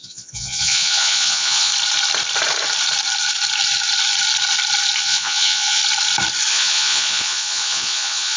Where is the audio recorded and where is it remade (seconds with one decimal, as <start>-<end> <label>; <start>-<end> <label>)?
0.0-1.7 remade; 1.7-5.0 recorded; 5.0-5.8 remade; 5.8-6.5 recorded; 6.5-8.4 remade